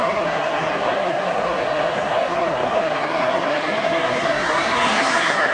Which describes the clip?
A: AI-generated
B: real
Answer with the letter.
A